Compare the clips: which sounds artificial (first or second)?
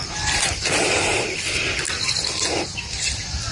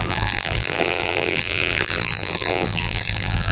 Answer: second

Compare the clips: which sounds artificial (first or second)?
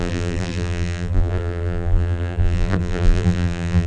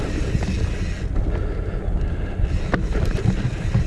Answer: first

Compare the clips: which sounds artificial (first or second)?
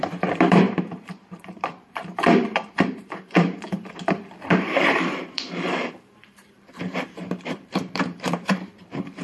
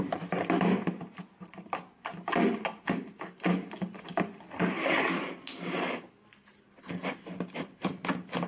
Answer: first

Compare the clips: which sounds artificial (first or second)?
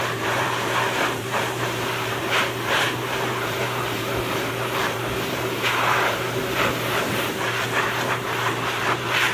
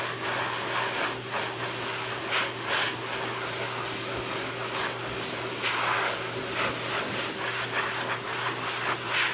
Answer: first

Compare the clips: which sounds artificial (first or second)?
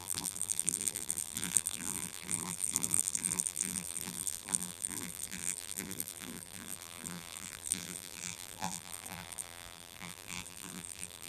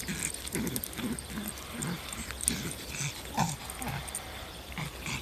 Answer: first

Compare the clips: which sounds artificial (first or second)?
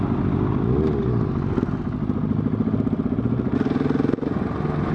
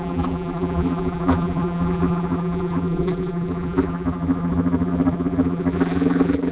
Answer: second